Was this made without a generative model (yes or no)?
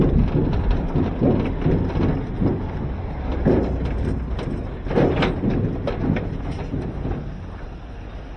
yes